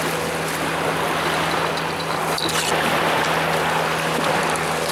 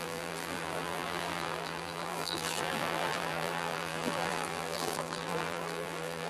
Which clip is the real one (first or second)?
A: first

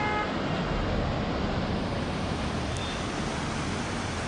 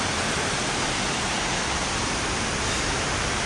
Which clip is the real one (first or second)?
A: first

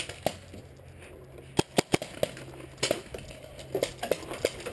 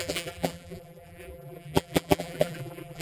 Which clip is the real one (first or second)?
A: first